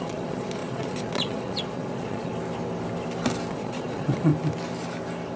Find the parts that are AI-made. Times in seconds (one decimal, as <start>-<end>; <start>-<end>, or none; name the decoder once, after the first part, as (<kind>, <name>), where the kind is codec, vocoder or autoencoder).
0.0-2.3 (vocoder, Vocos); 3.5-4.3